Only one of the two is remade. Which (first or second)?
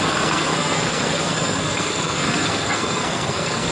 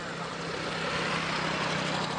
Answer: first